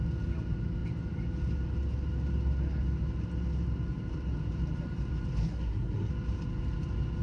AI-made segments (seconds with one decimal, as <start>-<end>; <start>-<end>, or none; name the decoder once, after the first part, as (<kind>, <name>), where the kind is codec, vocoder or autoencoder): 5.4-6.1 (codec, SNAC)